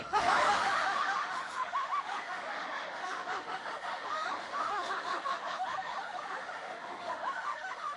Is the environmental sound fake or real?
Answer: fake